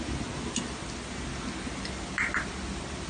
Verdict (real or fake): real